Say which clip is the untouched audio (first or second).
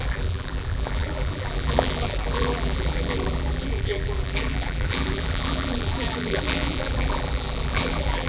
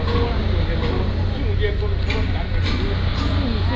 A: second